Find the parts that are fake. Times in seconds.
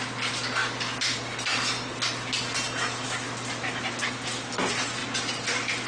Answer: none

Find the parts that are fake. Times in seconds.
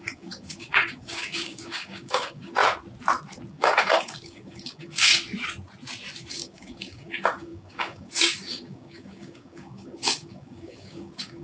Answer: 0.0-2.6 (codec, DAC); 3.5-5.1; 6.3-11.4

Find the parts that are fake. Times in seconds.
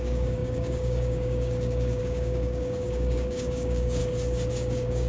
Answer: 0.0-4.0 (codec, DAC); 4.5-5.1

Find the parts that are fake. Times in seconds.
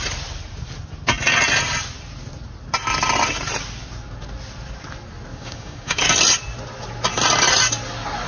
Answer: 5.3-6.0 (codec, DAC)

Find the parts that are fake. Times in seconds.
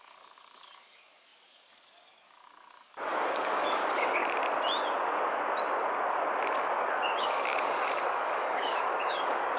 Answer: 0.0-4.2 (codec, DAC); 7.2-9.6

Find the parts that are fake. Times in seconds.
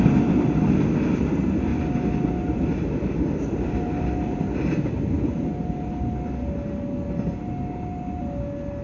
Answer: none